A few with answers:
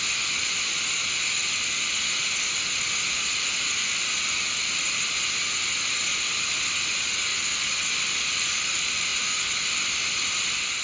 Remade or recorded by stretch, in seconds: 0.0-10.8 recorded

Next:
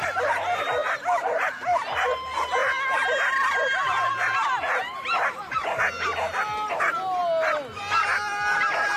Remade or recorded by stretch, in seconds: 0.0-9.0 recorded

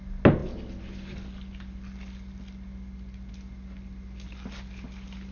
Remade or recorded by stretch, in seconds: 0.0-5.3 recorded

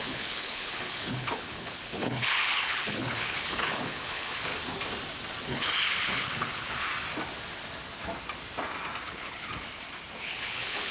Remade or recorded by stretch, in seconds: 0.0-4.5 remade; 4.5-5.5 recorded; 5.5-6.9 remade; 6.9-9.0 recorded; 9.0-9.5 remade; 9.5-10.2 recorded; 10.2-10.9 remade

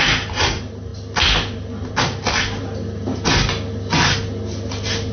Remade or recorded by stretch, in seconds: 0.0-5.1 recorded